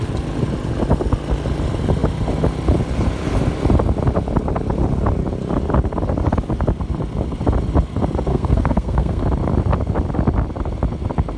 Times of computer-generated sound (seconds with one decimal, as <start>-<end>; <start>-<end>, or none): 8.3-9.2